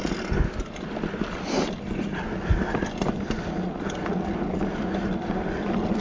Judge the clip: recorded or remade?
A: recorded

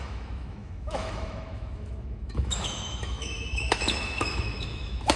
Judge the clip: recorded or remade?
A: remade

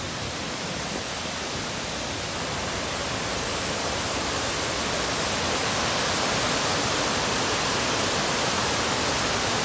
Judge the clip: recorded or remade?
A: recorded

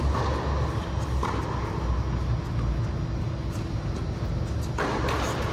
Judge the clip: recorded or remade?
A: recorded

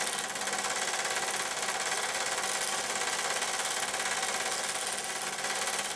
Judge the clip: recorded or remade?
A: recorded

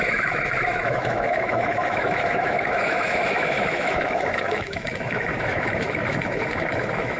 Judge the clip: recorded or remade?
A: remade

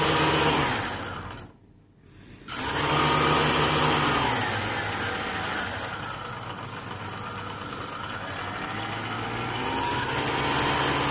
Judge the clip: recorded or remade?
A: recorded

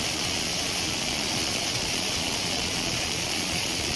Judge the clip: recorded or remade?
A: remade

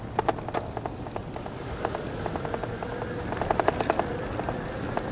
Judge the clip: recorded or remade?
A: recorded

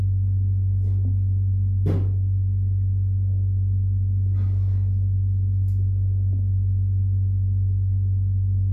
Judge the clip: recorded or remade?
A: recorded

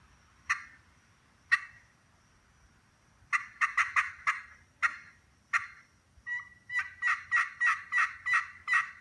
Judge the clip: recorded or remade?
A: recorded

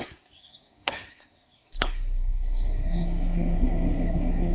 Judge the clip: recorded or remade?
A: remade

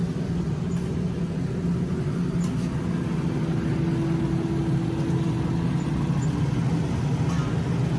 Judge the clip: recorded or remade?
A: recorded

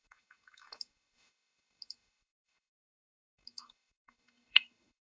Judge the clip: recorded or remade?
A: remade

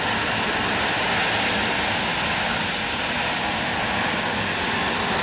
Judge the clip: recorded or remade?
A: recorded